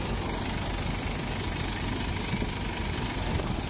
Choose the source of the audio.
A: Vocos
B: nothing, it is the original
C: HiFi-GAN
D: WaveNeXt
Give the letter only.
B